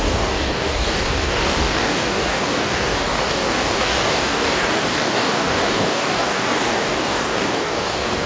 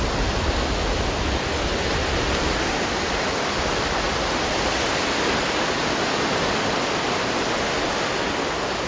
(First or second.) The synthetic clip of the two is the first